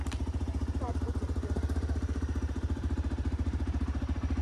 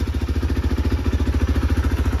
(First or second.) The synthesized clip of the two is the first